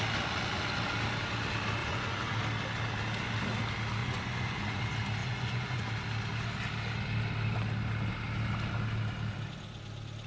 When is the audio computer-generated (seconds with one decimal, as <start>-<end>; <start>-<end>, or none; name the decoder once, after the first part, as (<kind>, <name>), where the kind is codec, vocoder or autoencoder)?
1.8-2.4 (vocoder, Vocos); 4.0-4.8; 5.2-5.9